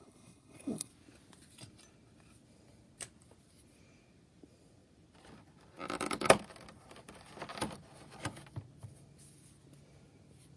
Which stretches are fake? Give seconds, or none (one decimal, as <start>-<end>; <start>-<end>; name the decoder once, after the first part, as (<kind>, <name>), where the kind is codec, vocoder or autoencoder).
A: 0.0-0.9 (codec, HILCodec)